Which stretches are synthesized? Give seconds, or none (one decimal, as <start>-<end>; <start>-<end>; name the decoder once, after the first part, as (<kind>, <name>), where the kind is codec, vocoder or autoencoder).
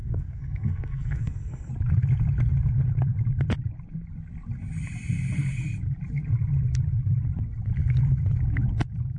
0.0-1.7 (codec, SNAC)